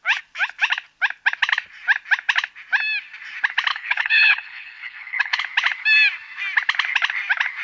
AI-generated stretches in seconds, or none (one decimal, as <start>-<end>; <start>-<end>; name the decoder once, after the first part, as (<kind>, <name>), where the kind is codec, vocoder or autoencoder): 3.7-5.4 (codec, HILCodec)